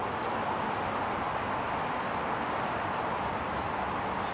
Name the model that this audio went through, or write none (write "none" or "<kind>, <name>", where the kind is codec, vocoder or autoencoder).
none